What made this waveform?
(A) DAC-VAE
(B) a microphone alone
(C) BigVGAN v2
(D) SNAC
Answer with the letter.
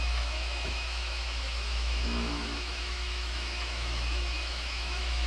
A